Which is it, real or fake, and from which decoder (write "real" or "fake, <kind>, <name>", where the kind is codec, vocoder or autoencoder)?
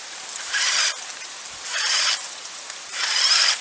fake, vocoder, BigVGAN v2